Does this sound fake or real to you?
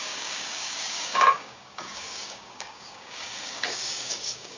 fake